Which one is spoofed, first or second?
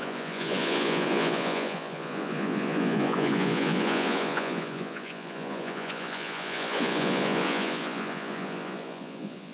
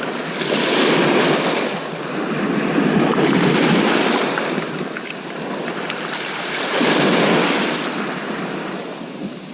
first